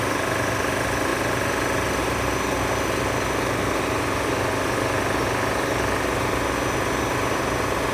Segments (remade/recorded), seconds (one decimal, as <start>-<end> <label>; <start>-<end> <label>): 0.0-7.9 recorded